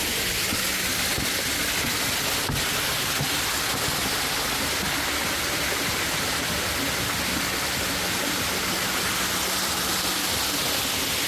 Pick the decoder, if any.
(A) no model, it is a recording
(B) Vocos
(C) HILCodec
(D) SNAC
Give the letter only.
A